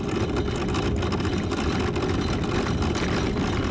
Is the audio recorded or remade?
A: recorded